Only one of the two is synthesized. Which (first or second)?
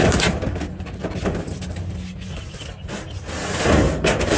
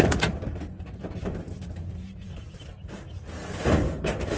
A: second